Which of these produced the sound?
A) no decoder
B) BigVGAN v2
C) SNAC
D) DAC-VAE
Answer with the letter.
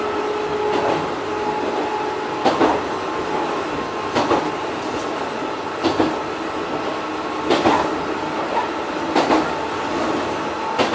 A